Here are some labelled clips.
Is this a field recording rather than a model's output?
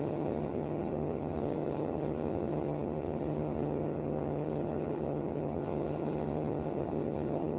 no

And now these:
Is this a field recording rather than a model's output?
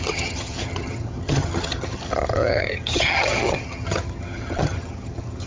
no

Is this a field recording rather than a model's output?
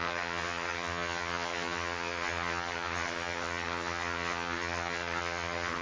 no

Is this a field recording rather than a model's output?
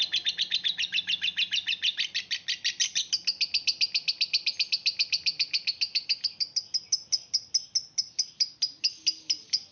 yes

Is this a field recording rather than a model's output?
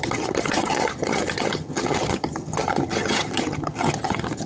no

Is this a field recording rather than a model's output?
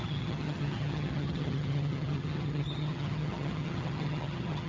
no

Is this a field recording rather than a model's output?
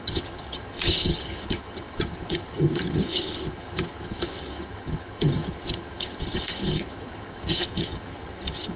no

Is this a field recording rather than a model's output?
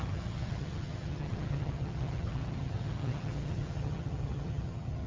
no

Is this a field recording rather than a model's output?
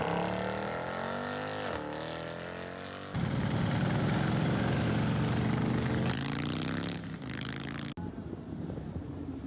yes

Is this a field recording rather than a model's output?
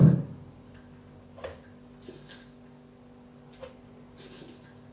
yes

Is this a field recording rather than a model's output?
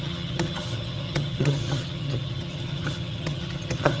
no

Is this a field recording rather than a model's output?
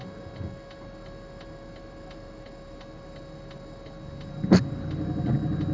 yes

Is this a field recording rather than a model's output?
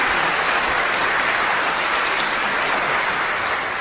yes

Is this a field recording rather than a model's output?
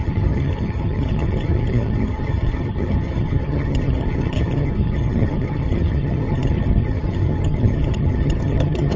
no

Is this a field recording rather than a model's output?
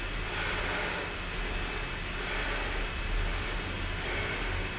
yes